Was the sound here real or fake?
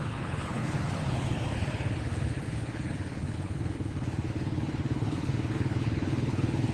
fake